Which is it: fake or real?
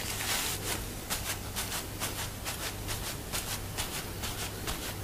real